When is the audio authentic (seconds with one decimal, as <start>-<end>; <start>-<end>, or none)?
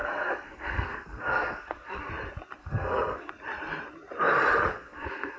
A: 2.1-2.6; 3.3-4.7